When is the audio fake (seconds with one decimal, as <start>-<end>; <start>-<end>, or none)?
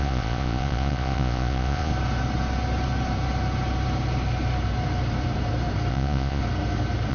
0.0-1.9; 5.9-6.4